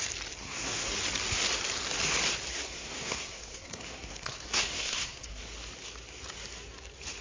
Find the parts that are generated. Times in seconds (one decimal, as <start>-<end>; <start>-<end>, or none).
0.4-0.9; 2.5-5.4